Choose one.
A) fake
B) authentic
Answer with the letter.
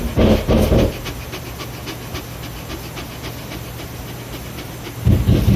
B